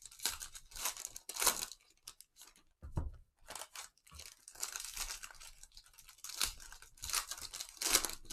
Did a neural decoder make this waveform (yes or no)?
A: no